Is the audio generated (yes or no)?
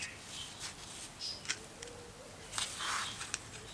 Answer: no